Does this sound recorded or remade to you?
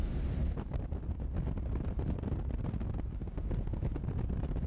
recorded